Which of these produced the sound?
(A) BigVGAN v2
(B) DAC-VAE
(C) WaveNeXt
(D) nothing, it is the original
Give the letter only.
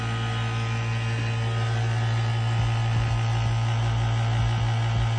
D